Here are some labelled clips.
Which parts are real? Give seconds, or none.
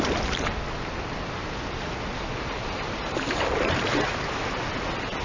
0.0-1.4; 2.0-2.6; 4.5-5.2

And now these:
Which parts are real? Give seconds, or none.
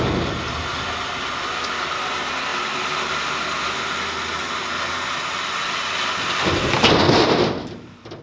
0.0-8.2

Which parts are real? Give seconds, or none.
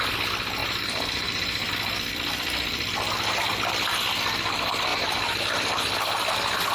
0.0-0.6; 1.7-4.9; 5.4-6.7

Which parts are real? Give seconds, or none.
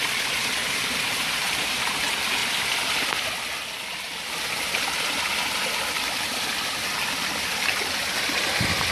0.0-0.6; 2.0-8.9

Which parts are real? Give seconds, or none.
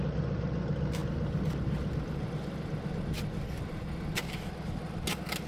0.0-5.5